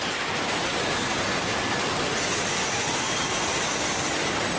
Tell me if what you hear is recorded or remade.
recorded